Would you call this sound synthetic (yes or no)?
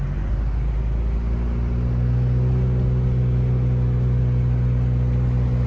no